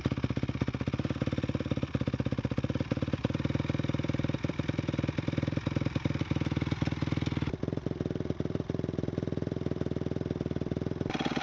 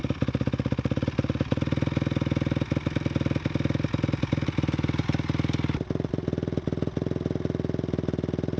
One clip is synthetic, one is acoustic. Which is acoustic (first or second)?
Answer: second